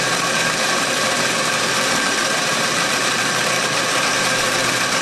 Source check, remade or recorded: remade